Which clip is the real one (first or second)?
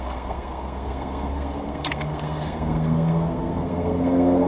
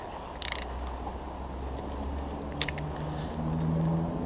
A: second